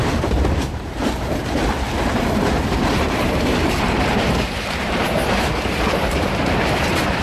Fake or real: fake